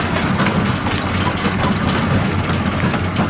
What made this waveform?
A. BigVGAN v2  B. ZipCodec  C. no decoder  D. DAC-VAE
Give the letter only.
C